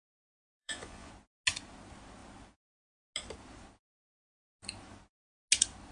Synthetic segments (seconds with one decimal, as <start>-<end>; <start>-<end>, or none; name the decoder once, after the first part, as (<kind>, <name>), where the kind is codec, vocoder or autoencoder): 0.0-1.1 (vocoder, Vocos)